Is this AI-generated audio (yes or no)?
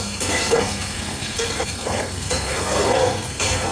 yes